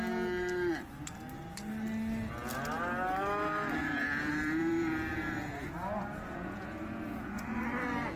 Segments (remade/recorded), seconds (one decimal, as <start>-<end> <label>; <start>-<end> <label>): 0.0-3.8 recorded; 3.8-7.6 remade; 7.6-8.2 recorded